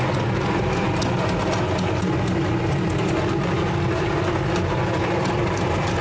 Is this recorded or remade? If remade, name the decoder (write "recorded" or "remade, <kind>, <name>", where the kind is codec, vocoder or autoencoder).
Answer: recorded